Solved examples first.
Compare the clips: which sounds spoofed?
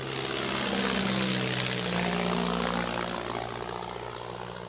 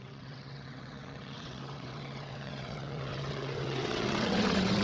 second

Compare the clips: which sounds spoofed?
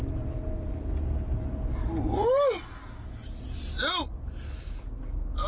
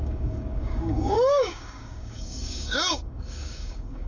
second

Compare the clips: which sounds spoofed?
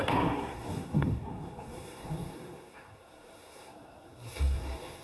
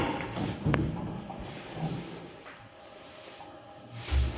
first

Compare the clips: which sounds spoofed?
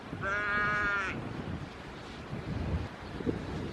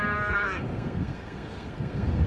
second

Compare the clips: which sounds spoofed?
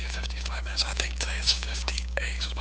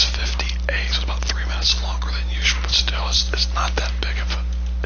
first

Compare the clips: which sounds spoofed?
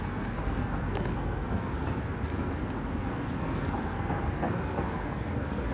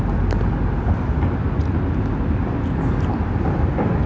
first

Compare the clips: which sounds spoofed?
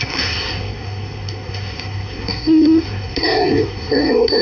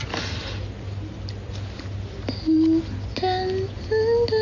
first